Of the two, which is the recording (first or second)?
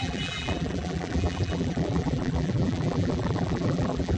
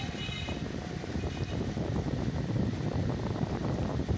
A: second